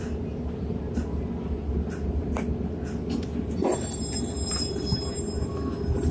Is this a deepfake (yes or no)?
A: no